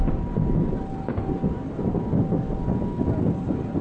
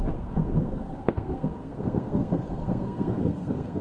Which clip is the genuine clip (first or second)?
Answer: first